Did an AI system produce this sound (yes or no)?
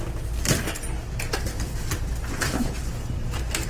no